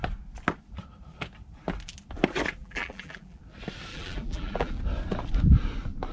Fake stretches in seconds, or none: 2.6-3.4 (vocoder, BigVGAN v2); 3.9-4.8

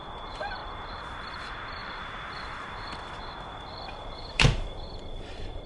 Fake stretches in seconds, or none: 0.0-1.8 (vocoder, BigVGAN v2); 2.4-5.7

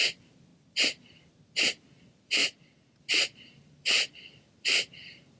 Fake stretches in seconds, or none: 0.0-0.5 (vocoder, BigVGAN v2); 2.0-2.4; 3.0-5.4

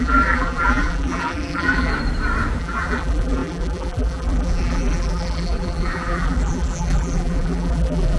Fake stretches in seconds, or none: 0.0-1.9 (vocoder, BigVGAN v2); 2.6-8.2